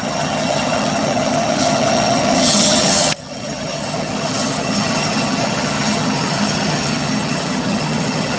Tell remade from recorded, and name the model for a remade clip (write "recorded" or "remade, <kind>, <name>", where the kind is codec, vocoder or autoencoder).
remade, vocoder, HiFi-GAN